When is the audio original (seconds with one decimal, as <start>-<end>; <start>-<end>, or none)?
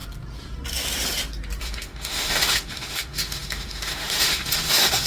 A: 0.0-1.6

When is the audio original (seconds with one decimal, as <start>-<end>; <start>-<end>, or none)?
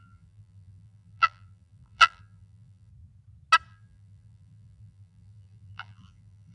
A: 2.9-3.7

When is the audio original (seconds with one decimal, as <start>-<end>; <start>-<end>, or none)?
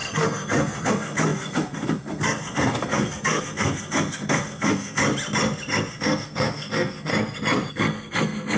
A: 5.0-5.9; 7.1-7.7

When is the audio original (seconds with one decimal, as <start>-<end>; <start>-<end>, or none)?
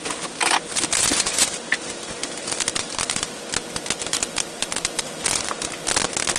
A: 0.0-6.4